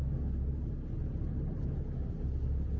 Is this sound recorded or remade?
recorded